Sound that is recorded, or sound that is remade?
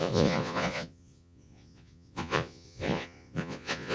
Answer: remade